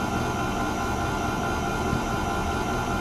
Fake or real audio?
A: real